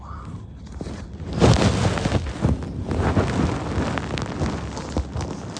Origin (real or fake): real